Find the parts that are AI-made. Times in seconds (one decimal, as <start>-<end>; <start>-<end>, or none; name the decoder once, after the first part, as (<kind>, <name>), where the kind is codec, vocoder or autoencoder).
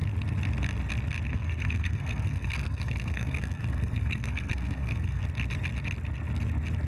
1.3-5.2 (codec, SNAC)